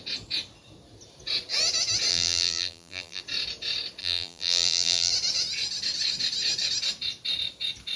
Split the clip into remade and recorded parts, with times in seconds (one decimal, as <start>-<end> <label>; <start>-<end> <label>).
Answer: 0.0-2.1 recorded; 2.1-3.2 remade; 3.2-4.0 recorded; 4.0-5.1 remade; 5.1-8.0 recorded